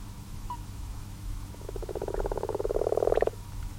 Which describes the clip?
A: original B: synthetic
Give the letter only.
B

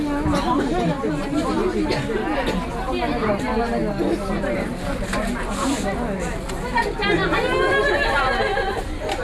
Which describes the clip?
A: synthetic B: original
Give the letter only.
B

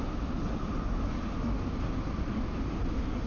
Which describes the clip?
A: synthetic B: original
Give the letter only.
B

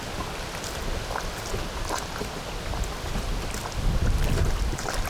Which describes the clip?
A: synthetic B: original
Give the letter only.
B